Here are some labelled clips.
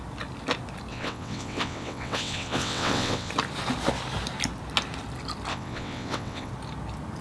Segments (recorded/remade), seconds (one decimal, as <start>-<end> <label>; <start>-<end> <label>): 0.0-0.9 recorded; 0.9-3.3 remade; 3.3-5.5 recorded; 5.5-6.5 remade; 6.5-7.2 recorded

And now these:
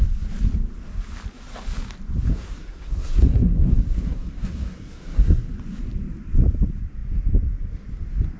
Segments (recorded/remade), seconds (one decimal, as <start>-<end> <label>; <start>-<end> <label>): 0.0-2.3 recorded; 2.3-5.5 remade; 5.5-8.4 recorded

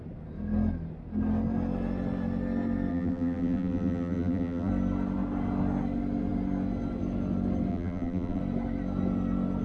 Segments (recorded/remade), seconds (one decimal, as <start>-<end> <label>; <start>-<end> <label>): 0.0-2.9 recorded; 2.9-4.7 remade; 4.7-7.7 recorded; 7.7-8.4 remade; 8.4-9.6 recorded

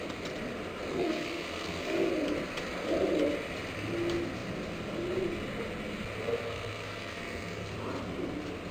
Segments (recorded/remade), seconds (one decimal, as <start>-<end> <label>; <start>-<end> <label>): 0.0-0.9 recorded; 0.9-2.1 remade; 2.1-6.2 recorded; 6.2-7.7 remade; 7.7-8.7 recorded

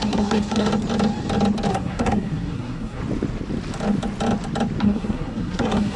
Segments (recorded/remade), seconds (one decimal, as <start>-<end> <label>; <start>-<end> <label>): 0.0-0.7 remade; 0.7-1.7 recorded; 1.7-3.0 remade; 3.0-4.8 recorded; 4.8-6.0 remade